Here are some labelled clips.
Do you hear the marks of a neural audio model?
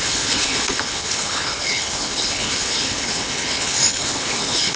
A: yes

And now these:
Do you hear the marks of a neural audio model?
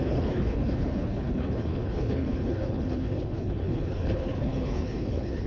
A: yes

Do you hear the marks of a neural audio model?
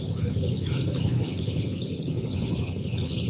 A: yes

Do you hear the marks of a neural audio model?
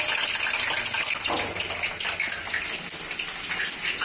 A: no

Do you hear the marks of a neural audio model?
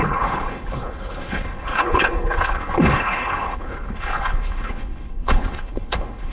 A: yes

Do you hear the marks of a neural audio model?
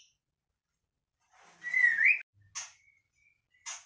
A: no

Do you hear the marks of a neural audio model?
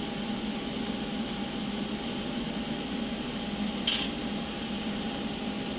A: no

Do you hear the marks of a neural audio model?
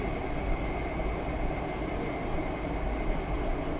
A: no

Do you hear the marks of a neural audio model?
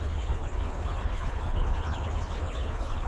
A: yes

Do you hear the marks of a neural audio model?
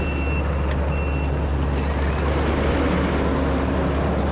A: no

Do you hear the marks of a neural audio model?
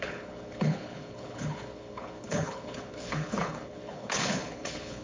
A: yes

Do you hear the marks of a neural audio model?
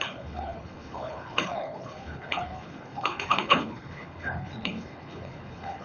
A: yes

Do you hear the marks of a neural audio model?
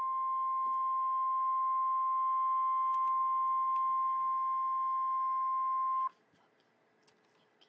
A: no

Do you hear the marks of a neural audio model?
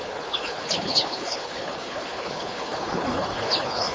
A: yes